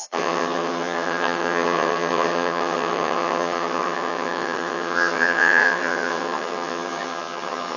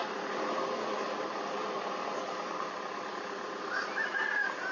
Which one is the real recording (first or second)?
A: second